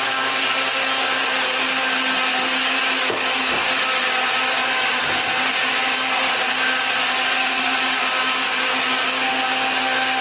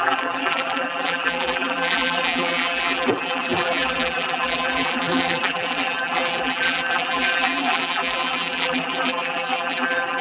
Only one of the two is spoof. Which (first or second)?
second